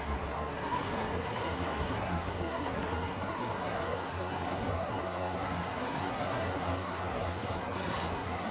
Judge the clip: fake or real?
fake